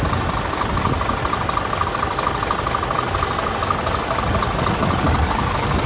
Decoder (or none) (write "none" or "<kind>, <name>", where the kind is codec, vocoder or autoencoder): none